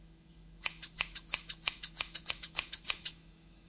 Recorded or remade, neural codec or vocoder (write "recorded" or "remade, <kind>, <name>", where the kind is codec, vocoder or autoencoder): remade, autoencoder, DAC-VAE